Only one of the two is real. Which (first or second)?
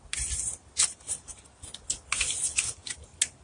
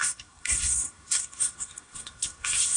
first